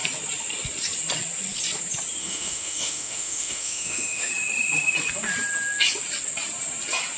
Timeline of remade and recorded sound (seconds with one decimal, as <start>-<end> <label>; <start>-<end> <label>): 0.0-2.2 recorded; 2.2-4.3 remade; 4.3-7.2 recorded